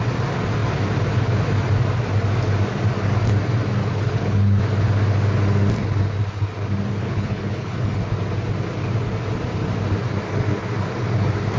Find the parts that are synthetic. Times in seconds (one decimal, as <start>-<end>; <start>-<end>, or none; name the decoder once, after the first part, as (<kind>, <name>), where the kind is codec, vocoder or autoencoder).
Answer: 3.8-4.6 (codec, HILCodec); 7.0-8.0